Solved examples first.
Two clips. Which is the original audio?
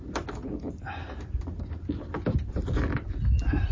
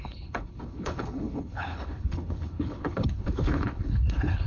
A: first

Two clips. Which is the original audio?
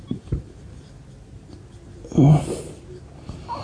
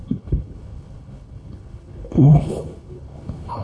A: first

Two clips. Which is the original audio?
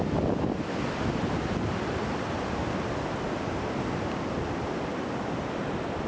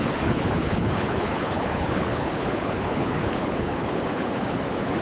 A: first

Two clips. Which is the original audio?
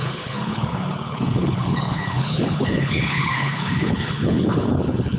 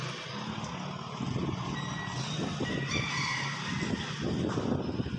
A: second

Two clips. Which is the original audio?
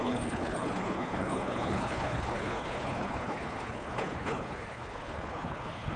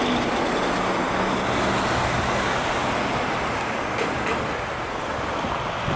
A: second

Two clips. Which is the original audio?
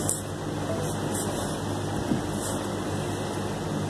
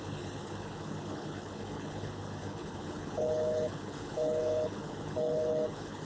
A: first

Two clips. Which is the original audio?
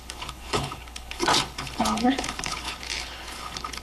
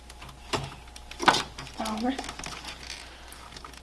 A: second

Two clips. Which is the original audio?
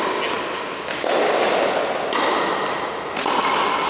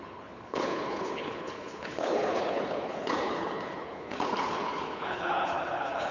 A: first